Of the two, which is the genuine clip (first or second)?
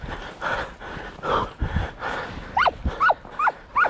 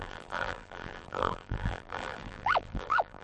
first